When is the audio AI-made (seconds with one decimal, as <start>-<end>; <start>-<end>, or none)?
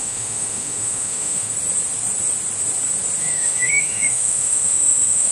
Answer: 0.0-1.5; 3.2-5.3